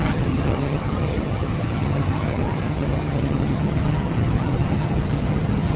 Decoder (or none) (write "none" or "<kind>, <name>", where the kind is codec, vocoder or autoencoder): vocoder, HiFi-GAN